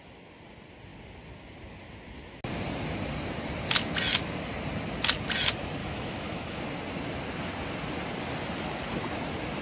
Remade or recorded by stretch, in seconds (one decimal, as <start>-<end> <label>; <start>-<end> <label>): 0.0-5.8 recorded; 5.8-6.6 remade; 6.6-9.6 recorded